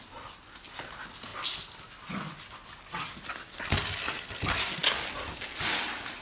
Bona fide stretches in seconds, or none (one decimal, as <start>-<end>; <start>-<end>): 0.0-6.2